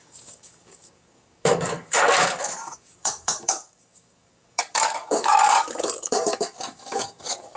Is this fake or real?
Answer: fake